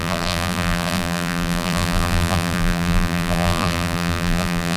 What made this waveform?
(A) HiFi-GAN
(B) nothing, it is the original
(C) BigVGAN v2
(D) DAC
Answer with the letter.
C